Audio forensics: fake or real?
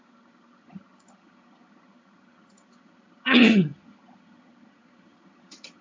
fake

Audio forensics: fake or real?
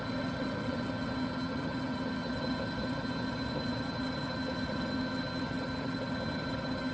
fake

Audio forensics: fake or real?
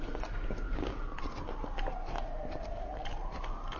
real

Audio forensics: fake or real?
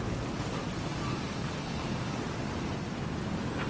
real